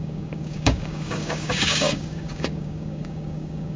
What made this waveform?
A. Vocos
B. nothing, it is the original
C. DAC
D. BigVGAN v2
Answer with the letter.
C